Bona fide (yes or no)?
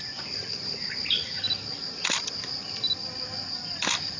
yes